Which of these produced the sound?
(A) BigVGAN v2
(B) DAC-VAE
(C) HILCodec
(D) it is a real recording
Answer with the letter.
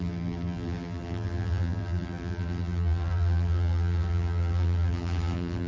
A